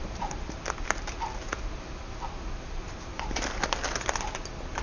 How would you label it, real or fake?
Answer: real